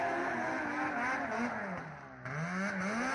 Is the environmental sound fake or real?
real